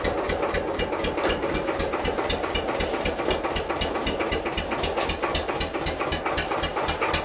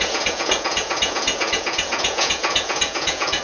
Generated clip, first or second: second